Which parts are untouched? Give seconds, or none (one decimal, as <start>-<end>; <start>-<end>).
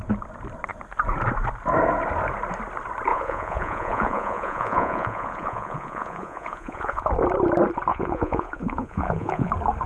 0.0-3.1; 7.1-7.9; 9.5-9.9